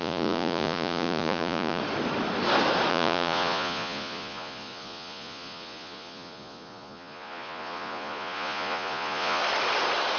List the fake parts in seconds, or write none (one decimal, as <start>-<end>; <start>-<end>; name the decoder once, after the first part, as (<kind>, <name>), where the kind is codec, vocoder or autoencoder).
0.0-1.8 (vocoder, Vocos); 2.9-9.4